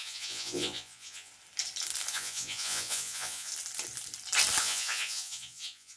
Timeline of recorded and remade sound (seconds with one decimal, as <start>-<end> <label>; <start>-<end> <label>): 0.0-1.3 remade; 1.3-2.1 recorded; 2.1-3.5 remade; 3.5-4.6 recorded; 4.6-6.0 remade